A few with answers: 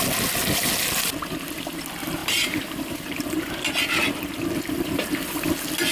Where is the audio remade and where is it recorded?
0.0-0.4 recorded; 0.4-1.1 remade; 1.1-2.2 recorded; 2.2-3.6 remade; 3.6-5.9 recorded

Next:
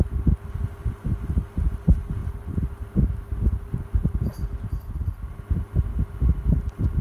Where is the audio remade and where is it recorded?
0.0-7.0 recorded

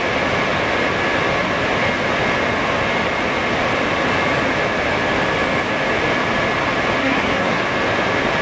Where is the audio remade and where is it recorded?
0.0-7.0 recorded; 7.0-7.6 remade; 7.6-8.4 recorded

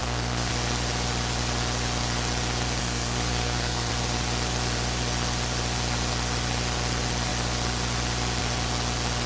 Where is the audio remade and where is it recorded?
0.0-0.5 remade; 0.5-2.8 recorded; 2.8-3.9 remade; 3.9-9.3 recorded

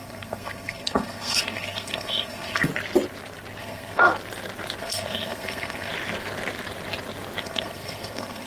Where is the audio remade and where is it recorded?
0.0-2.7 remade; 2.7-3.6 recorded; 3.6-4.1 remade; 4.1-4.8 recorded; 4.8-5.9 remade; 5.9-7.4 recorded; 7.4-8.5 remade

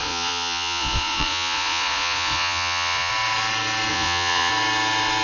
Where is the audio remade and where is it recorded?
0.0-3.1 remade; 3.1-3.9 recorded; 3.9-4.5 remade; 4.5-5.2 recorded

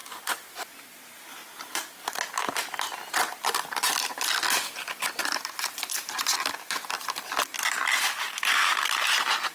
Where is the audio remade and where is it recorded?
0.0-9.5 recorded